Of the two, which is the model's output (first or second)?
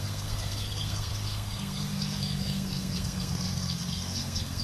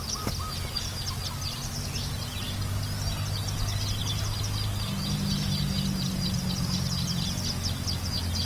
first